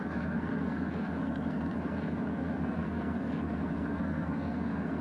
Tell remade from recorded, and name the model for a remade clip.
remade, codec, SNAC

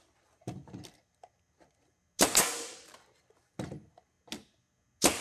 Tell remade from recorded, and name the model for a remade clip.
recorded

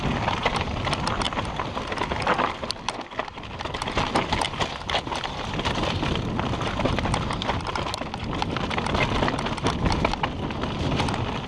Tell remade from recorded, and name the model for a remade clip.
recorded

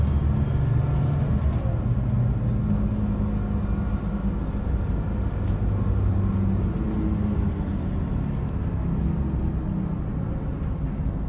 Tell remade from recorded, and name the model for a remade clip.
recorded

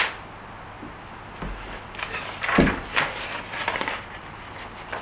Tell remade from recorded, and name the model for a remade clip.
recorded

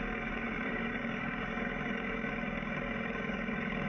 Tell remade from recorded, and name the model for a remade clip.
remade, codec, DAC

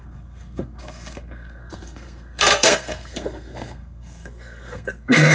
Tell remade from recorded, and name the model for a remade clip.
remade, codec, SNAC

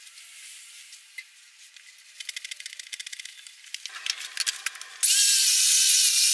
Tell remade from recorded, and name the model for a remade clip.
recorded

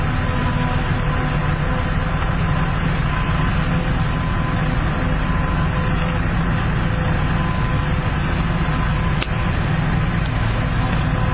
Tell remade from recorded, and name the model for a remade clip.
recorded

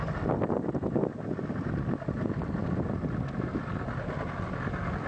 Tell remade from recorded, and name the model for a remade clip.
recorded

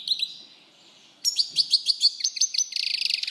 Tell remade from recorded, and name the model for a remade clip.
recorded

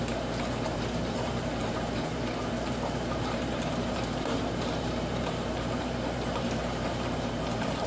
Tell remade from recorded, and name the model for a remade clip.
remade, vocoder, BigVGAN v2